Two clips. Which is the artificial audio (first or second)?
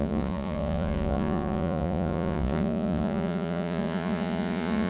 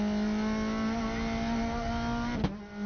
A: first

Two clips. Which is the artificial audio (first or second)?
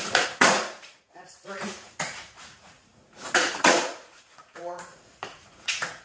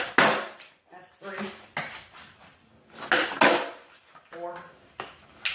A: first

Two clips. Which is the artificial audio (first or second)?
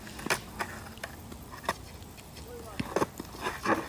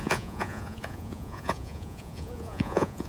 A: second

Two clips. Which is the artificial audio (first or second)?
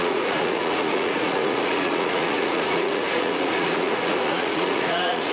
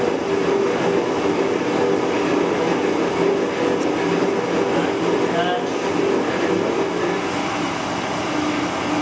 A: first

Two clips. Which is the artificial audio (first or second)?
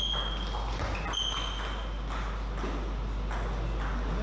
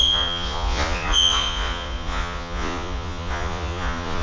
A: second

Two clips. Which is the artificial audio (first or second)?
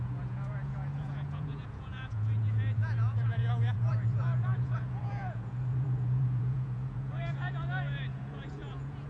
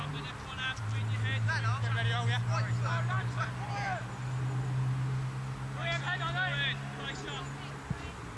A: first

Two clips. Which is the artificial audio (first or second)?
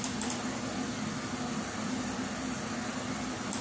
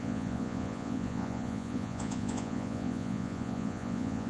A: second